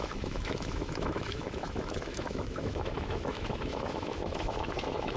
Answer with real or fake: fake